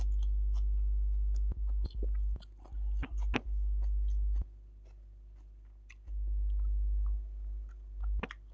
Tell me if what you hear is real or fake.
real